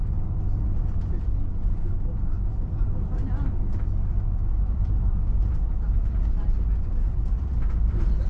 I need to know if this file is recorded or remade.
remade